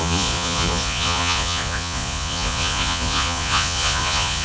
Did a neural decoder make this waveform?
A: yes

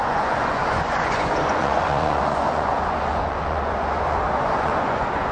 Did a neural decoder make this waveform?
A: yes